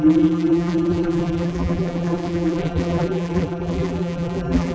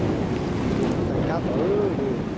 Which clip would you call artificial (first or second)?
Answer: first